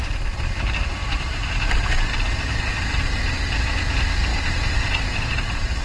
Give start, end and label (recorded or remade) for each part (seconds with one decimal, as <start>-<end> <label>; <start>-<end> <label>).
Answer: 0.0-1.0 recorded; 1.0-3.3 remade; 3.3-4.3 recorded; 4.3-5.8 remade